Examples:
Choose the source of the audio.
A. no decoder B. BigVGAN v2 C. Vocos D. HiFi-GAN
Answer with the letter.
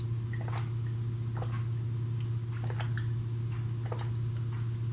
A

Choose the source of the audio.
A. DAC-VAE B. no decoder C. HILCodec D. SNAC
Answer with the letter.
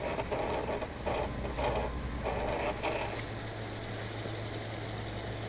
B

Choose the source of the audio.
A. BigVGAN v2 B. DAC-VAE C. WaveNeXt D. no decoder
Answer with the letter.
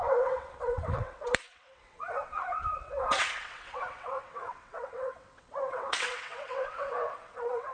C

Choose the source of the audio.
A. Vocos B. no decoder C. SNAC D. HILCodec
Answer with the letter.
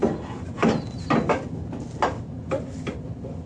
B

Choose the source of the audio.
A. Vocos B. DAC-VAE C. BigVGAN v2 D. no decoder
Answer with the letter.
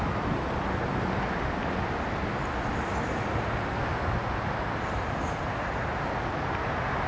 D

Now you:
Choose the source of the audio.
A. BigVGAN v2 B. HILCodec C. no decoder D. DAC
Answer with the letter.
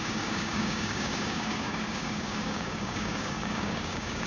D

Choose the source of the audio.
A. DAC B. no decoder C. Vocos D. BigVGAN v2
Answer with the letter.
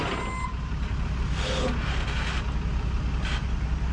B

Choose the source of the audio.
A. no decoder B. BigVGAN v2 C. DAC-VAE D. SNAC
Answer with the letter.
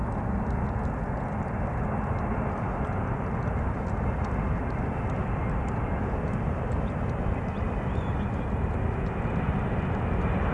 A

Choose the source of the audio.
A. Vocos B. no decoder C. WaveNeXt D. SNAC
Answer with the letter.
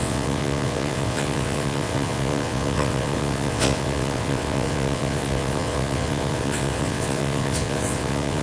C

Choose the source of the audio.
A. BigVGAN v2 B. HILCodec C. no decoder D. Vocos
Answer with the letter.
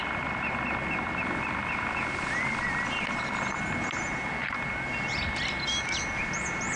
C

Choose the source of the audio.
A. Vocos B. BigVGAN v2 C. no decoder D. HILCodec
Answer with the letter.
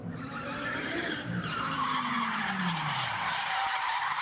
B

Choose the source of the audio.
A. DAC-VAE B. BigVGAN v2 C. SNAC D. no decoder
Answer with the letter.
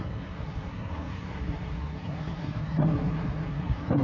C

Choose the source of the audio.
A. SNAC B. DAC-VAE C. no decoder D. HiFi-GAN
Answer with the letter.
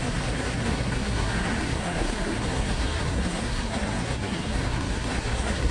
A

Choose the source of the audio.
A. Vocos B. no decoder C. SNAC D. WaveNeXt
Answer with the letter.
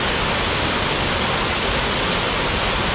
B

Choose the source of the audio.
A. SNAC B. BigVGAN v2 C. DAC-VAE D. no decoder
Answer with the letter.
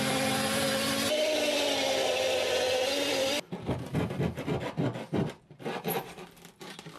D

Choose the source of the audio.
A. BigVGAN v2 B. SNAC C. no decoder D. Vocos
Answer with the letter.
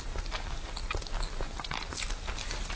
C